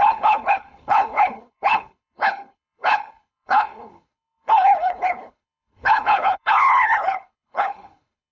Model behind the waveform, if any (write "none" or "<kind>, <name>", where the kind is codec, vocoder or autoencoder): codec, HILCodec